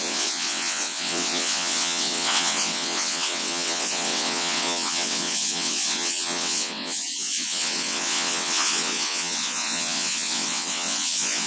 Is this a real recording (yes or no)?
no